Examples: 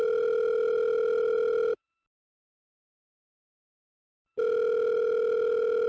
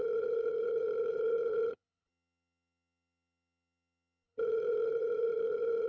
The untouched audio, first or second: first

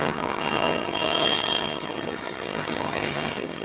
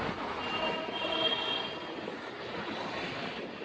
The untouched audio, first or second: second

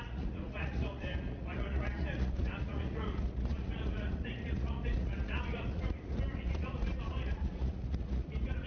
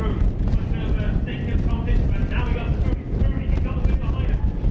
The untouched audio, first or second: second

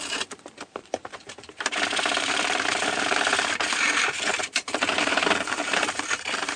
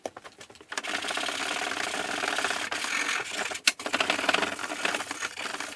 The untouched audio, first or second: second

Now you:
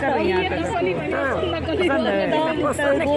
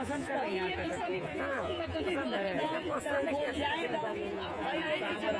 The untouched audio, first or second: first